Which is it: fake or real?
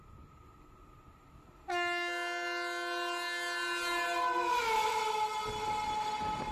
real